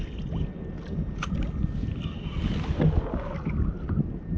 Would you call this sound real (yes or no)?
yes